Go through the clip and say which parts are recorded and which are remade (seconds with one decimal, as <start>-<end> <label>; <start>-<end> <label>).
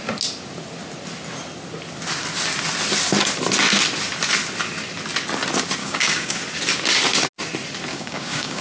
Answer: 0.0-5.8 recorded; 5.8-6.4 remade; 6.4-7.9 recorded; 7.9-8.6 remade